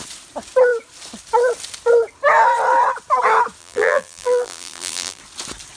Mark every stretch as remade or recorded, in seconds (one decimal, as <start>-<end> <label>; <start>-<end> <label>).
0.0-3.6 recorded; 3.6-5.2 remade; 5.2-5.8 recorded